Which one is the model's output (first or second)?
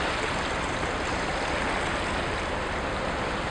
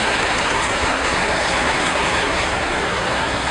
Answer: second